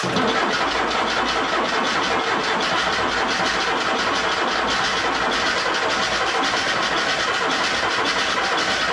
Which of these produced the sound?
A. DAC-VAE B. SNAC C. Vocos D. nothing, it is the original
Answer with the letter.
D